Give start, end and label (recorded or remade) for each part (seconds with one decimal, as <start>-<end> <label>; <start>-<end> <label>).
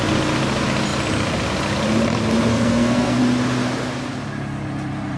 0.0-2.5 recorded; 2.5-3.2 remade; 3.2-5.2 recorded